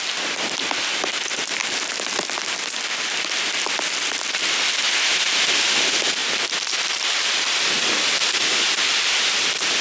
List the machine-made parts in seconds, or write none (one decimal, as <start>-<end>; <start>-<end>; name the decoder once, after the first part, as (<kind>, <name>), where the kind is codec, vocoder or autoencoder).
6.2-9.8 (vocoder, BigVGAN v2)

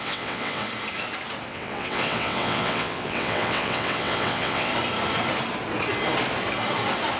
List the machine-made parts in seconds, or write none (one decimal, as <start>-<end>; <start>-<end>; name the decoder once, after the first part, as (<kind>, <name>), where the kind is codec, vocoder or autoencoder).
0.0-0.6 (vocoder, WaveNeXt); 1.5-4.7